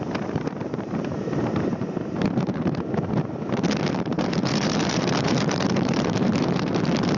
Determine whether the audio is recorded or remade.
remade